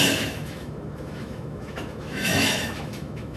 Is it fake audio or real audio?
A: fake